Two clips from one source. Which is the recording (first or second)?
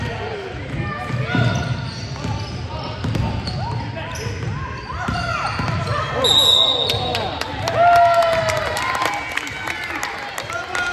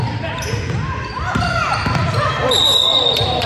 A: first